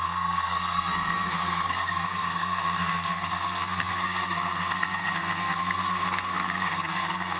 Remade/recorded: remade